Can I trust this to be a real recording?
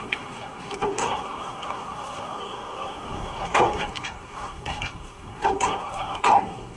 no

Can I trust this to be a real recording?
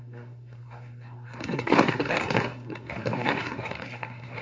no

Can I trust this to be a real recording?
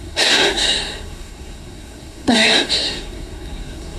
no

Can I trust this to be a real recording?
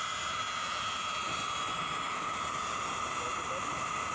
yes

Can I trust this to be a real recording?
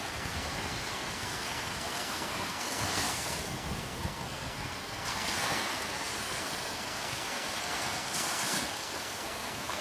no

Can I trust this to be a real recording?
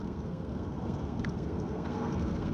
no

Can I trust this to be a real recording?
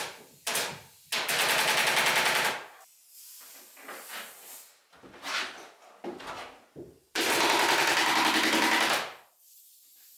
yes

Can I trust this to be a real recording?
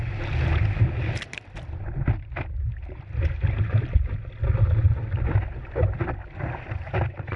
yes